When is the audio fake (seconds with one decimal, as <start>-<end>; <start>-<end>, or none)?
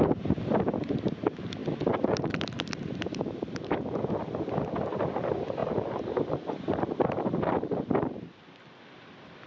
none